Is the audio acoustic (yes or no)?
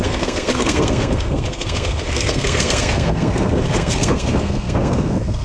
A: no